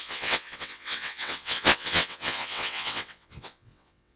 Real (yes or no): no